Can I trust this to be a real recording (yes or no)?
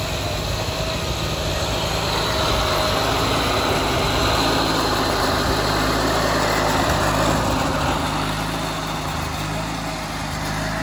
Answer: yes